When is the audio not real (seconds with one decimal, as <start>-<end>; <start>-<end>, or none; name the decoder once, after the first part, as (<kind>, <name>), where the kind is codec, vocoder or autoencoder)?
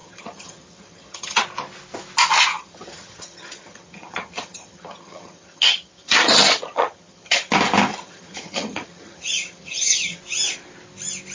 0.0-1.4 (vocoder, HiFi-GAN); 2.5-7.5; 7.9-10.2